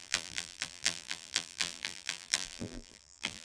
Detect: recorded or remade remade